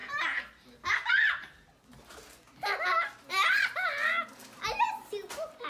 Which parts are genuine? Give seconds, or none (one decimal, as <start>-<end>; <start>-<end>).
0.0-3.3; 4.1-5.7